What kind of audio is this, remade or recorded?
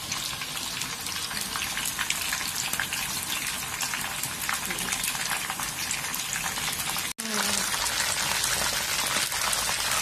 recorded